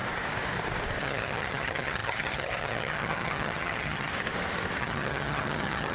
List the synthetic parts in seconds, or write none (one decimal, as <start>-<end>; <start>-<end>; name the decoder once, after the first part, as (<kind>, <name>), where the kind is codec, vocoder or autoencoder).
1.0-4.1 (vocoder, HiFi-GAN); 4.8-5.9